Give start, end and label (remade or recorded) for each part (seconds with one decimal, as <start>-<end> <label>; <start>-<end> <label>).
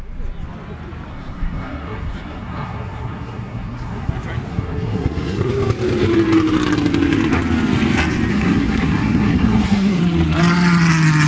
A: 0.0-1.1 recorded; 1.1-4.1 remade; 4.1-4.5 recorded; 4.5-5.5 remade; 5.5-8.3 recorded; 8.3-10.0 remade; 10.0-11.3 recorded